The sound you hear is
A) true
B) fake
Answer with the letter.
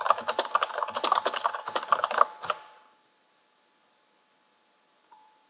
A